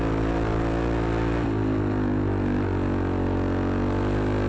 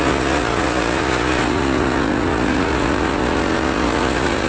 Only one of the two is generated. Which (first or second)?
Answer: second